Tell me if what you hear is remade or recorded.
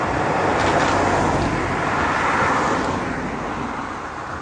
recorded